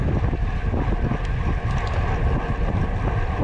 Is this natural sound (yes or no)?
yes